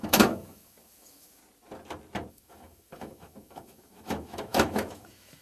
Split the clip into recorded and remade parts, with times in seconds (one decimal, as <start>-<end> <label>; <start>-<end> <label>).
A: 0.0-1.4 remade; 1.4-2.3 recorded; 2.3-5.4 remade